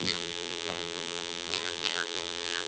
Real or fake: fake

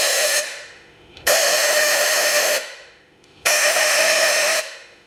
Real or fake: fake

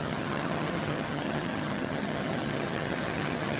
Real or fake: fake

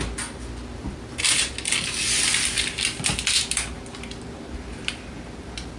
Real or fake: real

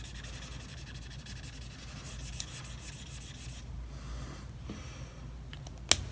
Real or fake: real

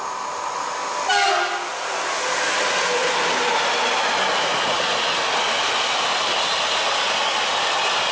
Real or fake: real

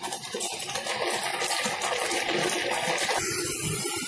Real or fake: real